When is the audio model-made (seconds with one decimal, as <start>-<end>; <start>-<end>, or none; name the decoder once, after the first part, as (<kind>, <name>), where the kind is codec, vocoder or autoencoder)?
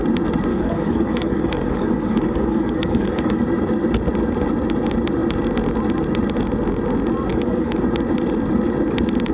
0.5-3.4 (codec, DAC); 7.3-7.8